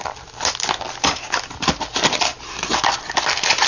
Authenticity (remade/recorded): recorded